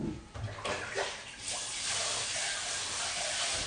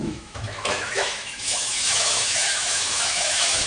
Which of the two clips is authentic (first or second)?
first